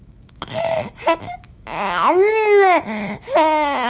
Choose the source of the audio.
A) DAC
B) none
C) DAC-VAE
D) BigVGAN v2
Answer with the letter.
C